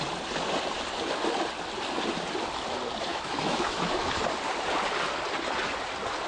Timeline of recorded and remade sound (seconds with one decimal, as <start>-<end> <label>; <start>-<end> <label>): 0.0-3.1 recorded; 3.1-4.1 remade; 4.1-6.3 recorded